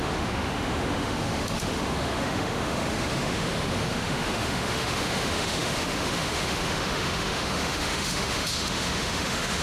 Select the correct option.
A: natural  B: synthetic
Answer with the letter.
B